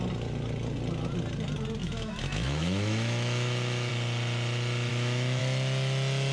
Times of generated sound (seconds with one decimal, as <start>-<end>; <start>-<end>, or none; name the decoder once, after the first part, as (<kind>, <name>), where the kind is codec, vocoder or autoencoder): 1.8-3.9 (autoencoder, DAC-VAE); 4.9-5.4